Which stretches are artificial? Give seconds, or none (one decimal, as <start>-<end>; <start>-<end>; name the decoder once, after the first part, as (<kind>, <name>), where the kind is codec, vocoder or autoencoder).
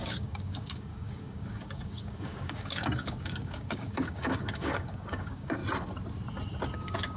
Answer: 0.0-5.6 (codec, DAC); 6.7-7.2